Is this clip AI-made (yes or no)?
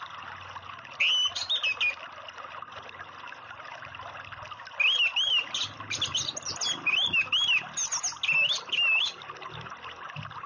no